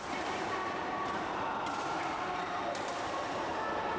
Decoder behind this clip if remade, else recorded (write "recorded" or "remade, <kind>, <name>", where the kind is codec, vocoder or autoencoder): recorded